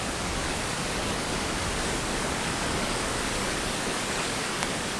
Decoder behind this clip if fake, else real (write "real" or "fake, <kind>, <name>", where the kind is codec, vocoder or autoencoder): fake, codec, DAC